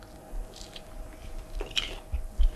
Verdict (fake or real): fake